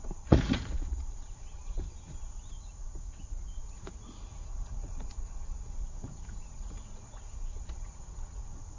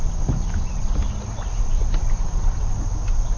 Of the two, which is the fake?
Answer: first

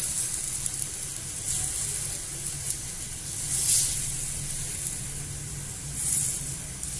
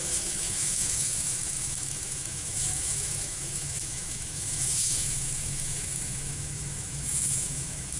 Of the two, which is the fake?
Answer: second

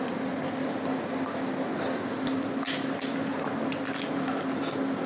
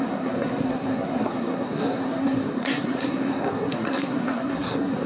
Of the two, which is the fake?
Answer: second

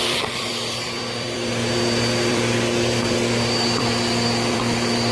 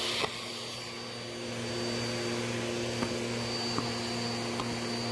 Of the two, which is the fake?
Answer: first